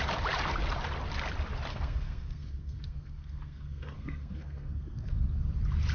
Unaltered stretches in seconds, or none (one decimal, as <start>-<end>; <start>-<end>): 0.0-1.7; 5.2-5.9